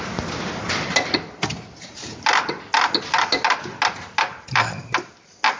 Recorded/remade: recorded